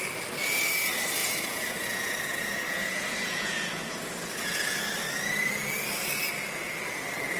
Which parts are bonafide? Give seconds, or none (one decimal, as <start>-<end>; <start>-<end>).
0.0-1.2; 4.8-7.4